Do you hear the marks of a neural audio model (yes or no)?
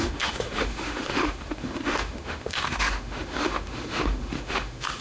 yes